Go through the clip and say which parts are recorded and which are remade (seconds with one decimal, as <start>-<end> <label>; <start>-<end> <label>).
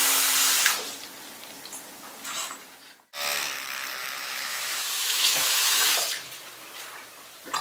0.0-4.0 recorded; 4.0-5.9 remade; 5.9-7.6 recorded